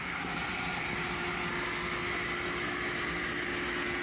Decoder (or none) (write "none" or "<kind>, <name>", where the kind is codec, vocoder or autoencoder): none